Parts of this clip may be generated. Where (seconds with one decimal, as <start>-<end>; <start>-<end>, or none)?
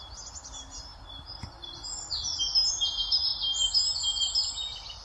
none